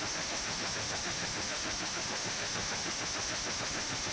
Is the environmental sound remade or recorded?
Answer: remade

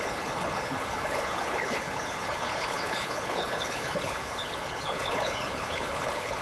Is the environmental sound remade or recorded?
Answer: remade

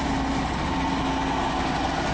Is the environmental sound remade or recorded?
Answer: recorded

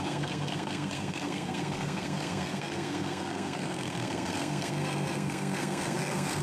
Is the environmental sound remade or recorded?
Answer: remade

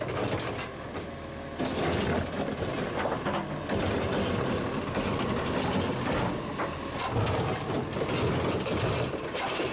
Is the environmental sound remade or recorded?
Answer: recorded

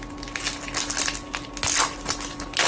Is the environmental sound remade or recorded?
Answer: recorded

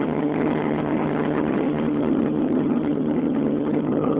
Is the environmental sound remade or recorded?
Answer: remade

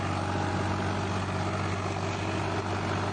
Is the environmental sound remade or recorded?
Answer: recorded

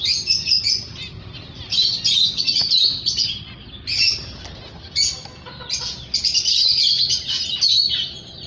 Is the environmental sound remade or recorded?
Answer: recorded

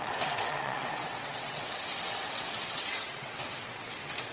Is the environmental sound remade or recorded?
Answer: remade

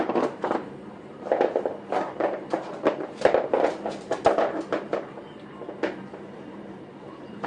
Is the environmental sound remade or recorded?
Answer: remade